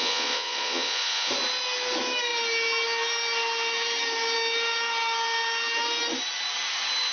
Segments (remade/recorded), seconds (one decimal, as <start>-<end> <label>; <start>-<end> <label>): 0.0-1.3 remade; 1.3-7.1 recorded